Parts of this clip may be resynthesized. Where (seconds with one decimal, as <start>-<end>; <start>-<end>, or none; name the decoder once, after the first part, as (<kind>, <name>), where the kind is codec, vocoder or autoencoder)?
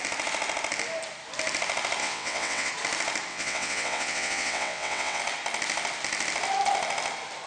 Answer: 2.0-2.7 (vocoder, WaveNeXt); 3.3-5.2